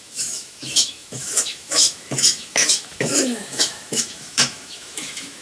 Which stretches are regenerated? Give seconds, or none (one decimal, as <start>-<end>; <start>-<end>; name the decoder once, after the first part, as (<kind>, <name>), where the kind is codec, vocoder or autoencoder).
0.0-5.4 (autoencoder, DAC-VAE)